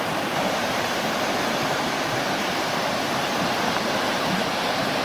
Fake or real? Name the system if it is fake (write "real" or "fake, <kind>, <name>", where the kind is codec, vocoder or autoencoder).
fake, vocoder, BigVGAN v2